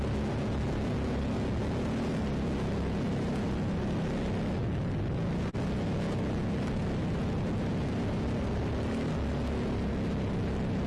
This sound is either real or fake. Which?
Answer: real